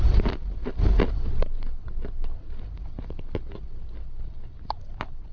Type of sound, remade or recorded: recorded